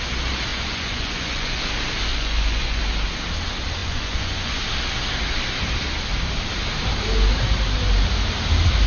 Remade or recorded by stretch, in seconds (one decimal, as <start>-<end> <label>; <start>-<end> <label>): 0.0-0.5 recorded; 0.5-1.6 remade; 1.6-2.1 recorded; 2.1-2.8 remade; 2.8-3.8 recorded; 3.8-4.6 remade; 4.6-8.9 recorded